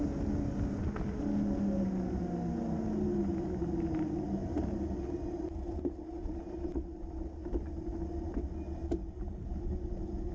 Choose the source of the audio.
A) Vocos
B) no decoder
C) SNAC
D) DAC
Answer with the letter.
B